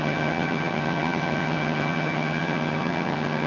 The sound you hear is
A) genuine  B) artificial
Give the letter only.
B